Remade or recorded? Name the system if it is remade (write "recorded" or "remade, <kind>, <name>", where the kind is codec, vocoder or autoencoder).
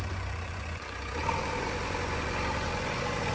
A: remade, vocoder, Vocos